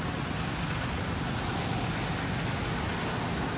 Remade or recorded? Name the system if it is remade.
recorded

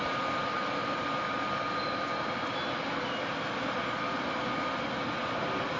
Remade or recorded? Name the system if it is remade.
recorded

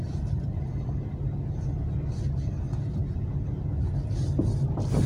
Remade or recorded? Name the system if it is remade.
recorded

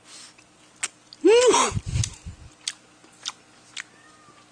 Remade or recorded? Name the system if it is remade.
recorded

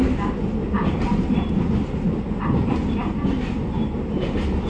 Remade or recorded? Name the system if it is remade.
recorded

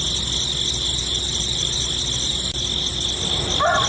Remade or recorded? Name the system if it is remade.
recorded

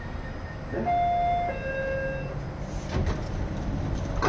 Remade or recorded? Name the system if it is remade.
recorded